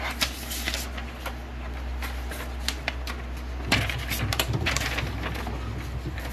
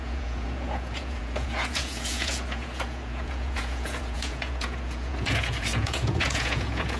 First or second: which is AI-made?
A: second